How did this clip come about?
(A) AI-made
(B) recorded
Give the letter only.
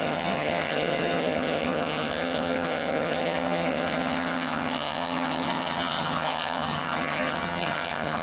A